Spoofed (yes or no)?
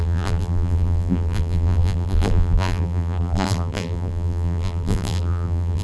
yes